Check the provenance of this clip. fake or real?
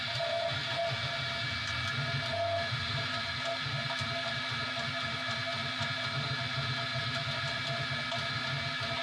real